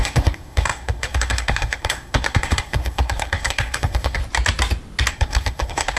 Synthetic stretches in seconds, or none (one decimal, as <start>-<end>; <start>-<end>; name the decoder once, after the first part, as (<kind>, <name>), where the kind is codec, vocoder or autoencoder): 0.0-4.2 (codec, SNAC); 5.1-6.0